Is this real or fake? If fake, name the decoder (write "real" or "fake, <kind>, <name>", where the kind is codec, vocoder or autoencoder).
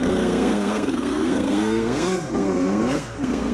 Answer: fake, codec, SNAC